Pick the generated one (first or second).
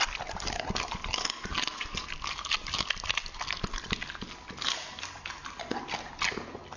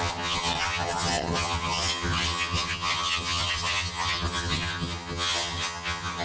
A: second